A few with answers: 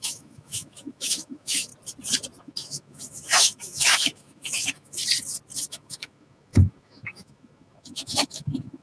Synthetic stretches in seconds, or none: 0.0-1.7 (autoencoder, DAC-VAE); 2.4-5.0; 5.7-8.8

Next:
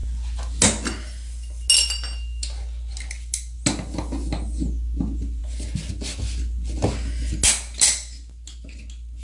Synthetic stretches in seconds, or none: none

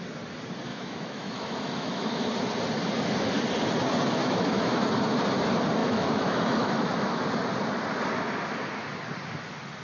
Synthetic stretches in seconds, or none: 0.7-2.3 (autoencoder, DAC-VAE); 4.2-4.8; 5.8-7.2